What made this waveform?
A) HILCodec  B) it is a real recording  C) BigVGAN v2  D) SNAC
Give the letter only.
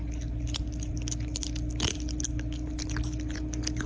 B